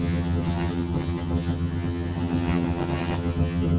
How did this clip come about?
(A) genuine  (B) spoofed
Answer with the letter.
B